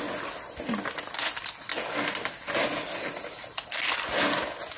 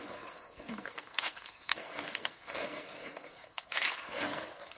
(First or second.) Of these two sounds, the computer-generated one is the second